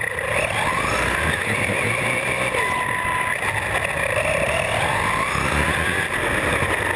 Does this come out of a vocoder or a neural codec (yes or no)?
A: no